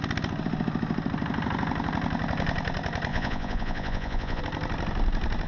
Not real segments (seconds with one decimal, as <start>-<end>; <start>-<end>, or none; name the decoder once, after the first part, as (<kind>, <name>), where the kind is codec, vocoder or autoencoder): 3.1-4.4 (vocoder, Vocos)